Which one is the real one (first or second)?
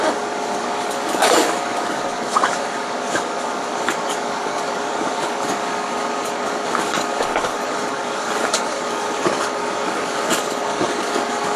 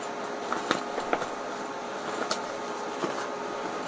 second